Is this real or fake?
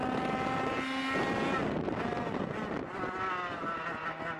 real